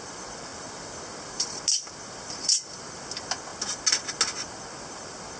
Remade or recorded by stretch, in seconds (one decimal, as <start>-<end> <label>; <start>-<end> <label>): 0.0-5.4 recorded